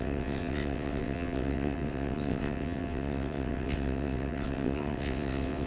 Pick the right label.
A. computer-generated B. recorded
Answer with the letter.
A